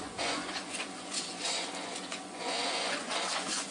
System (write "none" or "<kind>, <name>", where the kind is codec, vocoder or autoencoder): vocoder, Vocos